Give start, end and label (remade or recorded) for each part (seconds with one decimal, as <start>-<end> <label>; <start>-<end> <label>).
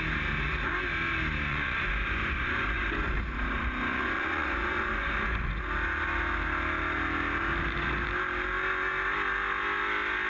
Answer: 0.0-1.5 recorded; 1.5-5.6 remade; 5.6-10.3 recorded